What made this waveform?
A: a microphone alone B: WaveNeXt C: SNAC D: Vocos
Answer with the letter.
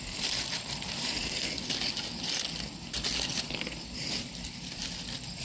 A